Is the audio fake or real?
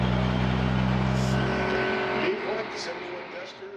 real